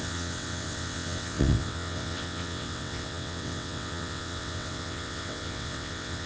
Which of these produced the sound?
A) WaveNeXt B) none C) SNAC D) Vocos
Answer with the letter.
A